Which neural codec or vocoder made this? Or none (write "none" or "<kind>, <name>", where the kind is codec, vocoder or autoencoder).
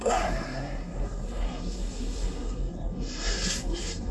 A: codec, SNAC